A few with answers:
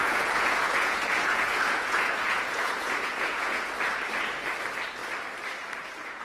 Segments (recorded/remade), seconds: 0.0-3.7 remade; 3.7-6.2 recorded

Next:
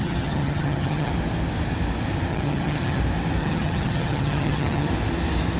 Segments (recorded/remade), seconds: 0.0-1.1 remade; 1.1-2.3 recorded; 2.3-3.0 remade; 3.0-3.4 recorded; 3.4-4.9 remade; 4.9-5.6 recorded

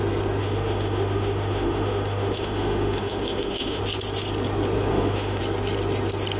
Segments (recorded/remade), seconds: 0.0-0.4 recorded; 0.4-3.8 remade; 3.8-4.9 recorded; 4.9-5.4 remade; 5.4-6.4 recorded

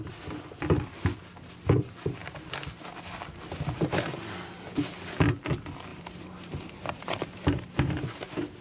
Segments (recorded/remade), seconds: 0.0-5.9 recorded; 5.9-8.6 remade

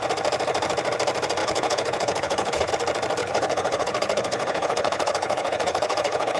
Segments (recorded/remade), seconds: 0.0-1.4 recorded; 1.4-2.7 remade; 2.7-3.2 recorded; 3.2-6.4 remade

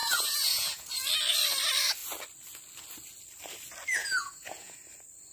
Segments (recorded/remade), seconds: 0.0-0.9 remade; 0.9-4.0 recorded; 4.0-4.8 remade; 4.8-5.3 recorded

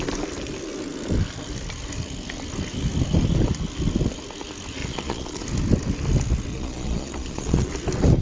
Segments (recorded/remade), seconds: 0.0-4.8 recorded; 4.8-5.4 remade; 5.4-6.5 recorded; 6.5-7.7 remade; 7.7-8.2 recorded